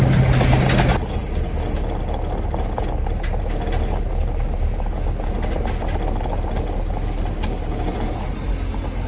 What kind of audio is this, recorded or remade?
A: recorded